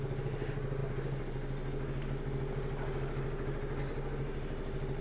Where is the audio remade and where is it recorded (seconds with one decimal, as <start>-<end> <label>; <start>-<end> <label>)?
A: 0.0-5.0 recorded

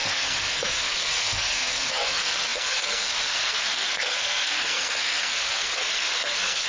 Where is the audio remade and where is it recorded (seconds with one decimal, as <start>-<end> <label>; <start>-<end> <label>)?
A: 0.0-6.7 remade

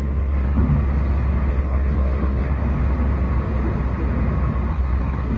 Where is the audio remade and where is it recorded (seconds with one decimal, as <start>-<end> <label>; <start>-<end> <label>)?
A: 0.0-0.6 remade; 0.6-1.5 recorded; 1.5-2.6 remade; 2.6-4.7 recorded; 4.7-5.4 remade

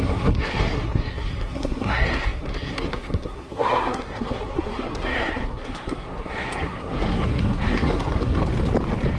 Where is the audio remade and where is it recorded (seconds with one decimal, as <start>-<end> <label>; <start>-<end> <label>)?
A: 0.0-8.4 remade; 8.4-9.2 recorded

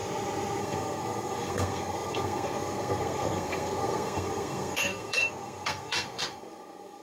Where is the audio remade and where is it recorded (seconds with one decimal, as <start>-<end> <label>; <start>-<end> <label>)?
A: 0.0-0.6 recorded; 0.6-7.0 remade